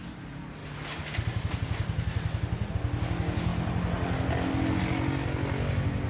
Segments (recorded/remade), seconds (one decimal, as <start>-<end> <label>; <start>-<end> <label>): 0.0-6.1 recorded

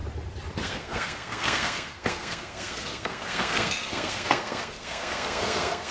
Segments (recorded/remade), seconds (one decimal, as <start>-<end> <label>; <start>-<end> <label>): 0.0-0.6 recorded; 0.6-5.9 remade

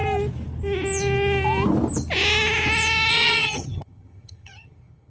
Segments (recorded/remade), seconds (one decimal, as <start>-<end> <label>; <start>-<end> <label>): 0.0-3.1 recorded; 3.1-5.1 remade

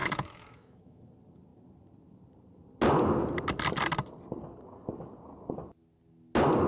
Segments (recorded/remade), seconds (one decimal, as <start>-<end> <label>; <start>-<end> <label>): 0.0-1.0 remade; 1.0-6.7 recorded

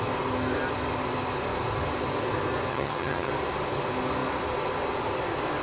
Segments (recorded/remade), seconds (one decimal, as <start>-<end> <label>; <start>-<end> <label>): 0.0-2.7 recorded; 2.7-3.3 remade; 3.3-5.6 recorded

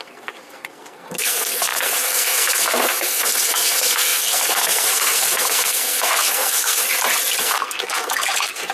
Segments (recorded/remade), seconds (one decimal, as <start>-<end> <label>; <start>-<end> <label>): 0.0-6.8 remade; 6.8-7.4 recorded; 7.4-8.7 remade

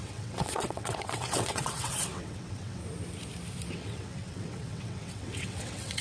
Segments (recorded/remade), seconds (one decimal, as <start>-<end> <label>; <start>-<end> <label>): 0.0-2.8 remade; 2.8-3.7 recorded; 3.7-6.0 remade